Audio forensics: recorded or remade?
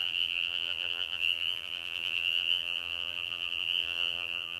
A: remade